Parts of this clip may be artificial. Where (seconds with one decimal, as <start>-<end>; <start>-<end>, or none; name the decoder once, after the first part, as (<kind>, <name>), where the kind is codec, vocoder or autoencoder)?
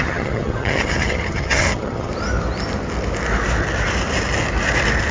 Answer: 0.0-2.1 (vocoder, HiFi-GAN)